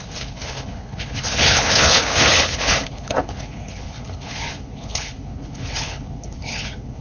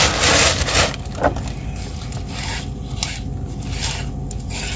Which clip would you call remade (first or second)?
first